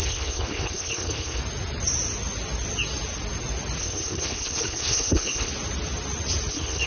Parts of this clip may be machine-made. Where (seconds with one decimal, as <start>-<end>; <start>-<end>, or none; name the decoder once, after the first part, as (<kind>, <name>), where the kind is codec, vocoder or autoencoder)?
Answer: 0.0-1.4 (codec, HILCodec); 3.8-5.5; 6.5-6.9

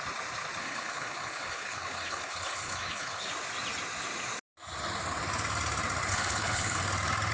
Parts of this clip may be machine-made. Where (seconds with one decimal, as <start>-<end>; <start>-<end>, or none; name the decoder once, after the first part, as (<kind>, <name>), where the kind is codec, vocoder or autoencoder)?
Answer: 0.6-3.3 (codec, HILCodec); 6.1-6.8

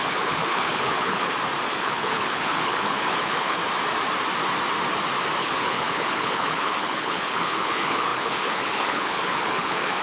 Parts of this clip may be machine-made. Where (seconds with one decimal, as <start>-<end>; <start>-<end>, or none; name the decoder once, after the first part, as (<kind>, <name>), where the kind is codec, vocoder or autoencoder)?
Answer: 0.0-1.2 (codec, HILCodec); 1.8-3.6; 5.4-10.0